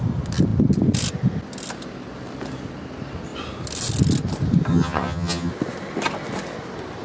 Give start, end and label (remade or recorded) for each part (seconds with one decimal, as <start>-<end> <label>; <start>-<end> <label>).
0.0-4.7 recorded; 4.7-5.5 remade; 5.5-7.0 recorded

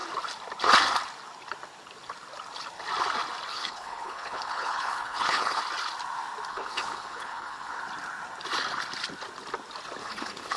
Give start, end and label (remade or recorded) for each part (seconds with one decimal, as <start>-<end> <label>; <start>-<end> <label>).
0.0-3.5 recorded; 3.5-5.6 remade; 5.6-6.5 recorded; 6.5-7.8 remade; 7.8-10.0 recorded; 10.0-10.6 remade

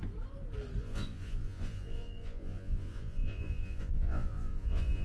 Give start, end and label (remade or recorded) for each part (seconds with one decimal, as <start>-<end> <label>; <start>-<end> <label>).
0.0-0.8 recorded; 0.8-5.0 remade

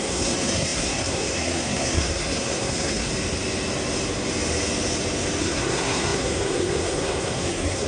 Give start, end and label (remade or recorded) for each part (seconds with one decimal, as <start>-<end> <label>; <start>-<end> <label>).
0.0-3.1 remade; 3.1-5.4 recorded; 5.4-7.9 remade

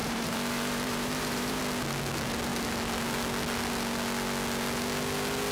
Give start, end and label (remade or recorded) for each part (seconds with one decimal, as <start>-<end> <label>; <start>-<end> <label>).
0.0-1.6 remade; 1.6-5.5 recorded

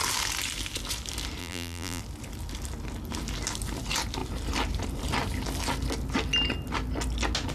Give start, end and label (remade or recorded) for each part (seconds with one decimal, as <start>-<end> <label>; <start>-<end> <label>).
0.0-1.4 recorded; 1.4-2.0 remade; 2.0-7.5 recorded

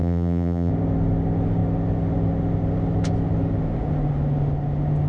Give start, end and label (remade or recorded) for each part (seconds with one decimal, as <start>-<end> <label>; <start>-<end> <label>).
0.0-0.7 remade; 0.7-5.1 recorded